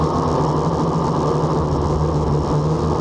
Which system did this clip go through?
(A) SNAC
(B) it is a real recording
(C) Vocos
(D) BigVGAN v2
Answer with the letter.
B